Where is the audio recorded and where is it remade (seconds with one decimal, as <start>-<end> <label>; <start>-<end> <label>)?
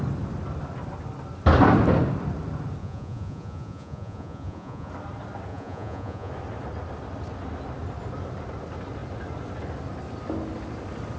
0.0-2.8 recorded; 2.8-4.9 remade; 4.9-5.5 recorded; 5.5-6.3 remade; 6.3-11.2 recorded